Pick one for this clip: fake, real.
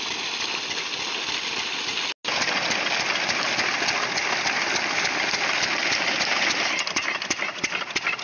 real